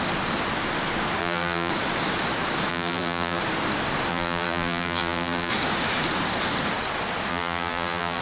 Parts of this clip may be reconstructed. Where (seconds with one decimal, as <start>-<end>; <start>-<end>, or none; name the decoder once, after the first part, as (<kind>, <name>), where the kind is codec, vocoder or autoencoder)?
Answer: 1.2-1.7 (vocoder, BigVGAN v2); 2.7-3.4; 4.1-5.5; 7.3-8.2